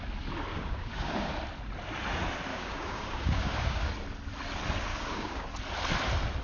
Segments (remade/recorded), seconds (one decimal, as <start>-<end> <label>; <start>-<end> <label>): 0.0-0.5 recorded; 0.5-1.3 remade; 1.3-2.5 recorded; 2.5-3.9 remade; 3.9-4.9 recorded; 4.9-5.5 remade; 5.5-6.4 recorded